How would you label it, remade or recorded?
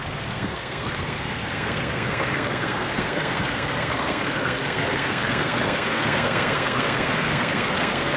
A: remade